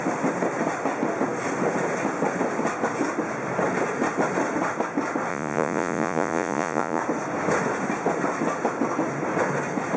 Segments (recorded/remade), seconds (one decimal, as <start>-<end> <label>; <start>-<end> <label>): 0.0-5.3 recorded; 5.3-7.0 remade; 7.0-10.0 recorded